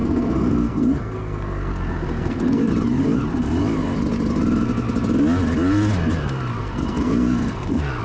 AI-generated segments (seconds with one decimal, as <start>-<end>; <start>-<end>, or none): 0.0-2.7; 6.6-8.0